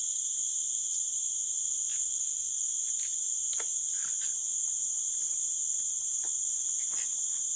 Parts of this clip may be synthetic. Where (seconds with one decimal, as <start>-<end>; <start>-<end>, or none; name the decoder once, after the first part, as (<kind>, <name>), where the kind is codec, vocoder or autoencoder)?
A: 2.0-2.7 (codec, SNAC)